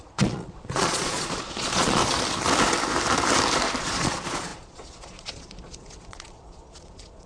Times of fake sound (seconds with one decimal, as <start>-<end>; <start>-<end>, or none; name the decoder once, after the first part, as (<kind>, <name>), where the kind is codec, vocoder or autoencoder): 0.0-2.0 (vocoder, Vocos); 3.8-7.3